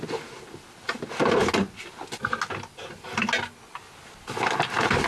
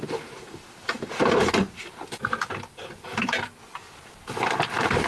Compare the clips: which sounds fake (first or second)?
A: second